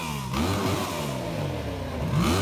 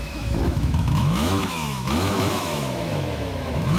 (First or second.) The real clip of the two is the first